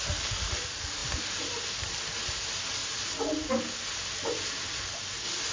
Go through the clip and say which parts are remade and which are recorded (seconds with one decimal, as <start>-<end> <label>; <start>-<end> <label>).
0.0-5.5 recorded